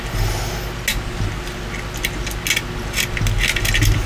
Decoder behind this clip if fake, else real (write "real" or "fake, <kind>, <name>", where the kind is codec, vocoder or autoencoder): real